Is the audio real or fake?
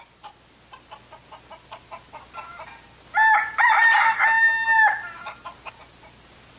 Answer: real